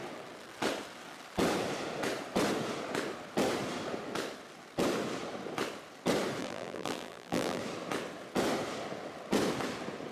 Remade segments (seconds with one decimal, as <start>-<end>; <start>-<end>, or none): 6.4-7.6